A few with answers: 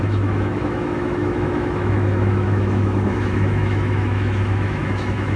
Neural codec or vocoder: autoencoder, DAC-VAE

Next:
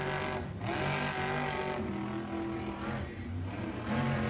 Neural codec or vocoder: none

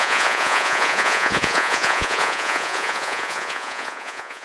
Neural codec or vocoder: vocoder, Vocos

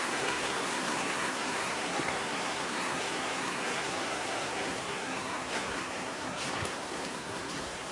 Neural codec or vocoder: codec, SNAC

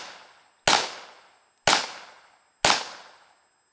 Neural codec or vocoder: none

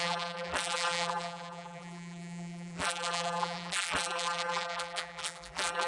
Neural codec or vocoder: vocoder, BigVGAN v2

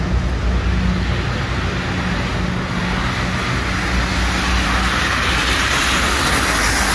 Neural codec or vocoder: none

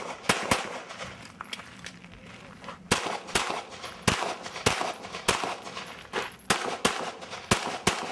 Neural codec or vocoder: none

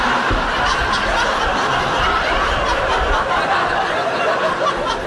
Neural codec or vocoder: none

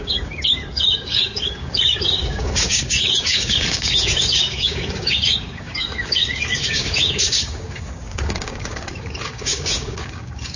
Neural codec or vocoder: codec, DAC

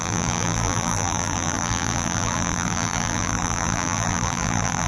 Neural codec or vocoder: vocoder, BigVGAN v2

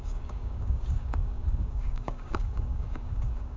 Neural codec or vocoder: codec, DAC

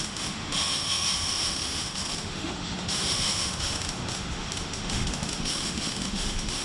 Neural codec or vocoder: autoencoder, DAC-VAE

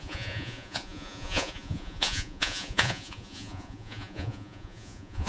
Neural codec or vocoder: vocoder, Vocos